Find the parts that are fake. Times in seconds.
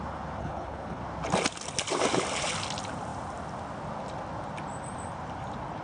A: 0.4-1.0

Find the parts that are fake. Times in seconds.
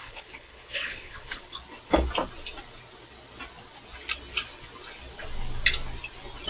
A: 0.0-1.4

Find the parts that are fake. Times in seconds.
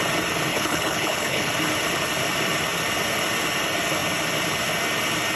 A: 0.5-1.5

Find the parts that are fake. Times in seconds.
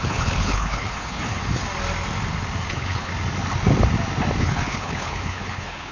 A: 0.0-1.4; 2.7-3.1; 4.4-5.9